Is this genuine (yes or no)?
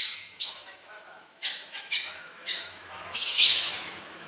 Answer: no